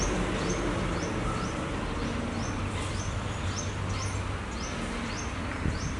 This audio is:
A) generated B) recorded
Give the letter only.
B